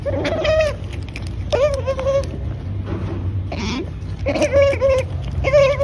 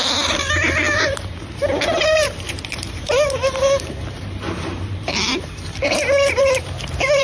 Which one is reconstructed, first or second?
second